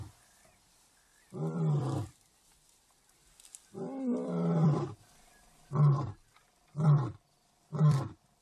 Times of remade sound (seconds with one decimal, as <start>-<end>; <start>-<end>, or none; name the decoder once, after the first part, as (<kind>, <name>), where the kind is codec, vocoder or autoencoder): 0.0-5.0 (vocoder, BigVGAN v2); 5.8-8.4